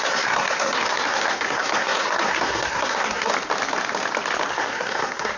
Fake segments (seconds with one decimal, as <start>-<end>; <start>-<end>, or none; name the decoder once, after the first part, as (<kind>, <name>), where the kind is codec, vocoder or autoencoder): 0.0-3.3 (codec, SNAC); 4.5-5.4